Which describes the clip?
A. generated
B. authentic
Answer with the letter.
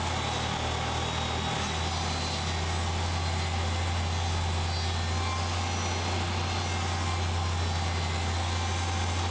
B